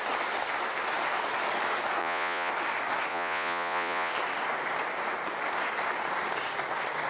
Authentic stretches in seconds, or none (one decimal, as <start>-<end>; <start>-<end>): 0.0-2.0; 2.5-3.1; 4.1-7.1